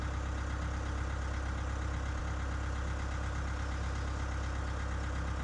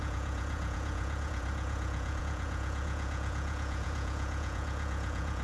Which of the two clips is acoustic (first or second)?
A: first